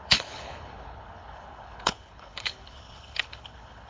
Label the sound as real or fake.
fake